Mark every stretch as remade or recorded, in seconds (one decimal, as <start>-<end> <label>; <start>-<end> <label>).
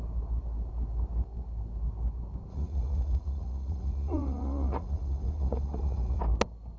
0.0-2.5 recorded; 2.5-6.2 remade; 6.2-6.8 recorded